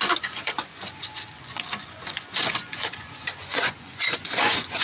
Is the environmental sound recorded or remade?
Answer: remade